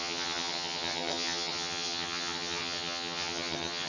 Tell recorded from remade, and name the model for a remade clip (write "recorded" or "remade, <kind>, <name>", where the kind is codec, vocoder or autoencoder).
remade, vocoder, HiFi-GAN